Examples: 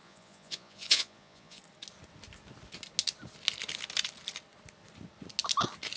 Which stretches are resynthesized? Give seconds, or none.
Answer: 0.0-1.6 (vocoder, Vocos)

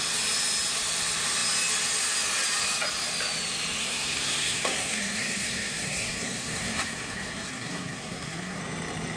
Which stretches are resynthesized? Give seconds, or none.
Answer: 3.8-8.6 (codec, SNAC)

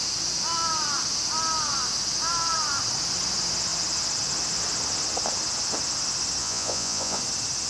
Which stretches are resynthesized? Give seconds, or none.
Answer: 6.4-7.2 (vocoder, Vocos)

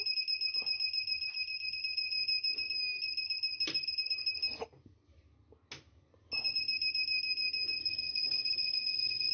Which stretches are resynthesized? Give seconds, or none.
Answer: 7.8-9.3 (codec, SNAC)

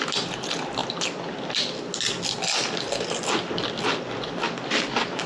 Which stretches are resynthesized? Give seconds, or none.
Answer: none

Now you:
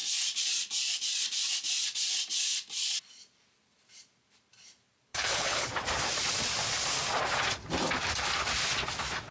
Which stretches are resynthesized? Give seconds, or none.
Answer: 5.1-5.7 (codec, HILCodec)